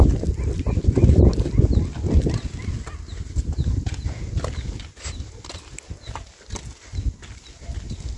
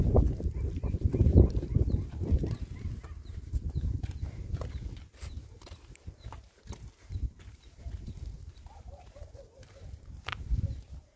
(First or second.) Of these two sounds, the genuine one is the first